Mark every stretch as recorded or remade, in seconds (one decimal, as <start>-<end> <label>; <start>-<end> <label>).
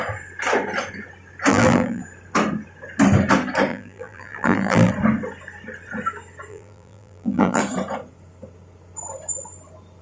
0.0-1.5 recorded; 1.5-2.0 remade; 2.0-3.7 recorded; 3.7-4.9 remade; 4.9-6.5 recorded; 6.5-7.6 remade; 7.6-10.0 recorded